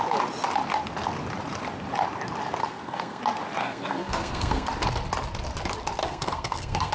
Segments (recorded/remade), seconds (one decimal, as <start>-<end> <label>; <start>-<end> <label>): 0.0-2.6 recorded; 2.6-3.2 remade; 3.2-3.6 recorded; 3.6-4.7 remade; 4.7-6.0 recorded; 6.0-6.9 remade